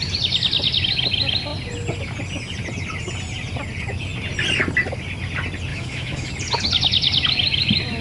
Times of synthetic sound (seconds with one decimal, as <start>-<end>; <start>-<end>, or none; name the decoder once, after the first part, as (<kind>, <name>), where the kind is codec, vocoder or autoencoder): 5.7-6.3 (autoencoder, DAC-VAE)